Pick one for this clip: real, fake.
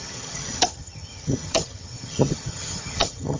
fake